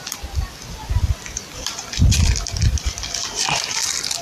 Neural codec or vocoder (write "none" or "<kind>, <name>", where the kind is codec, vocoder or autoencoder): vocoder, BigVGAN v2